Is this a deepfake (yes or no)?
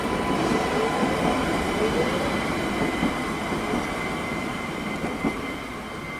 no